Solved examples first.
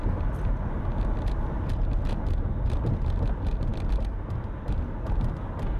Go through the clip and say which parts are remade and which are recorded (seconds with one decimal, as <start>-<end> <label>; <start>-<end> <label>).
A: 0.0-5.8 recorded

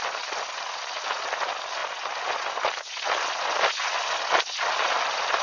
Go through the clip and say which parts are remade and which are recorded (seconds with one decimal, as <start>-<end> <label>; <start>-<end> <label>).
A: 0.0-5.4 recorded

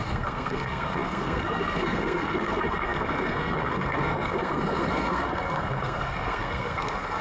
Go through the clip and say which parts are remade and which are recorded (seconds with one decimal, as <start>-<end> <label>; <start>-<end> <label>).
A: 0.0-7.2 remade

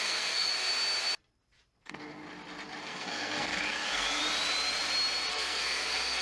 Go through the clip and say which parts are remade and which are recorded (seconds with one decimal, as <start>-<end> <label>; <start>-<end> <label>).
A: 0.0-0.5 remade; 0.5-1.8 recorded; 1.8-2.2 remade; 2.2-2.8 recorded; 2.8-4.2 remade; 4.2-5.3 recorded; 5.3-6.2 remade